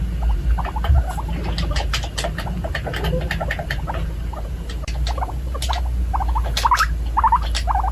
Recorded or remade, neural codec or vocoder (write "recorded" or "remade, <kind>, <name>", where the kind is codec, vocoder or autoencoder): recorded